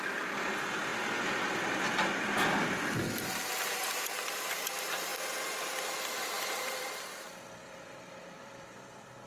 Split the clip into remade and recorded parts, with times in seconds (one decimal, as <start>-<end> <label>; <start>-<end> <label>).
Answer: 0.0-0.9 remade; 0.9-4.1 recorded; 4.1-9.3 remade